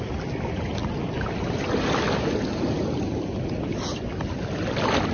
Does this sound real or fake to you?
real